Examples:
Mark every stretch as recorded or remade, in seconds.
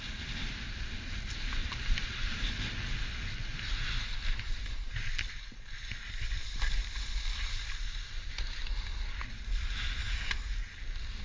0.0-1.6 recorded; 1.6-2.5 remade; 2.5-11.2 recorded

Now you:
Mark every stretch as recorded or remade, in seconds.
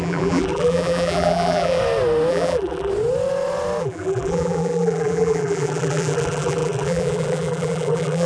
0.0-1.8 remade; 1.8-2.3 recorded; 2.3-2.9 remade; 2.9-3.8 recorded; 3.8-8.3 remade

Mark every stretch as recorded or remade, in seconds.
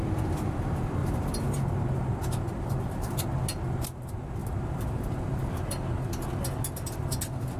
0.0-1.0 recorded; 1.0-1.7 remade; 1.7-4.4 recorded; 4.4-5.6 remade; 5.6-7.6 recorded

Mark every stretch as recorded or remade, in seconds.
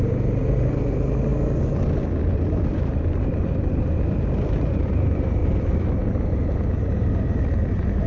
0.0-1.3 remade; 1.3-2.2 recorded; 2.2-8.1 remade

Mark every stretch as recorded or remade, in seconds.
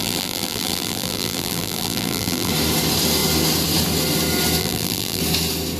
0.0-2.5 remade; 2.5-4.6 recorded; 4.6-5.2 remade; 5.2-5.8 recorded